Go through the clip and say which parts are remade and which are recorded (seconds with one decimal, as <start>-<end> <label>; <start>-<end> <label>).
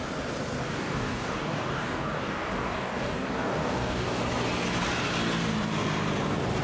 0.0-0.6 recorded; 0.6-4.2 remade; 4.2-6.6 recorded